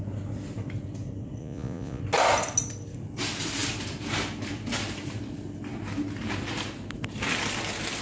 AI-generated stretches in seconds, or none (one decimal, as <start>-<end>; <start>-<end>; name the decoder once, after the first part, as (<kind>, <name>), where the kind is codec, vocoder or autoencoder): 1.4-2.0 (vocoder, Vocos)